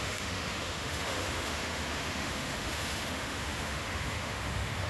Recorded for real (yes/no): no